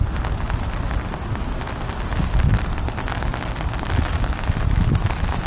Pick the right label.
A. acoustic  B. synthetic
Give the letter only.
A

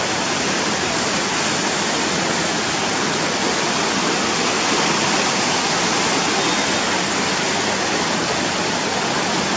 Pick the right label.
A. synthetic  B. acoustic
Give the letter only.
B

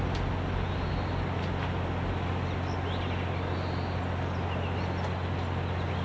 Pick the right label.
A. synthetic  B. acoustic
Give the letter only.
B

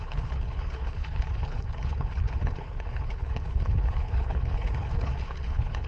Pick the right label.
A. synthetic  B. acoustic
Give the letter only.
A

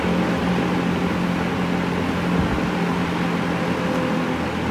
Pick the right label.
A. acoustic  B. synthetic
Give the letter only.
A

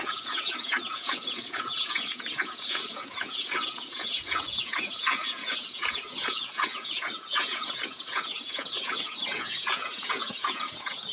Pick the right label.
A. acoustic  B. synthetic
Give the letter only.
B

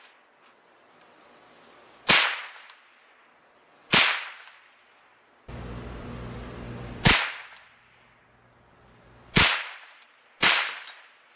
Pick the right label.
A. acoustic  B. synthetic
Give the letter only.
A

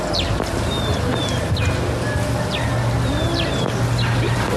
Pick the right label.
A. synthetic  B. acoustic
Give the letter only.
B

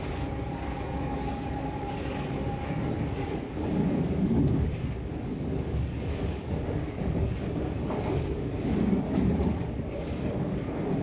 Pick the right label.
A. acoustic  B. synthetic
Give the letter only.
B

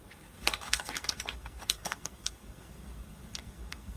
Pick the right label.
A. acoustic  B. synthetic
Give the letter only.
B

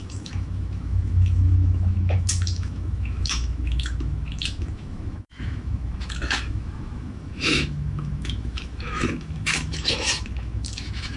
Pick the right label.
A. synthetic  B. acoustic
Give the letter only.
A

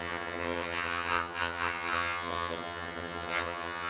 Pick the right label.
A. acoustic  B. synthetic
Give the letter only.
B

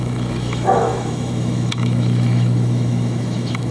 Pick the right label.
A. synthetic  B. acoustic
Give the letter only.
A